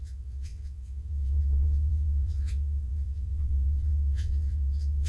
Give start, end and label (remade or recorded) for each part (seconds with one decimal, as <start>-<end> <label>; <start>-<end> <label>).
0.0-5.1 remade